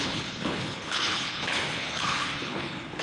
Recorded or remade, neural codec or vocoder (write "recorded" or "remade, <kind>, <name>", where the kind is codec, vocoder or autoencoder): remade, codec, HILCodec